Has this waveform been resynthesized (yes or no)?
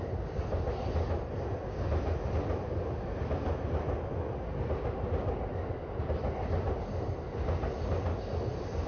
no